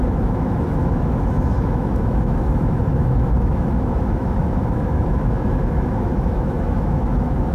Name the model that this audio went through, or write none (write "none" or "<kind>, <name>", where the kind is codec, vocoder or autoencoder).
autoencoder, DAC-VAE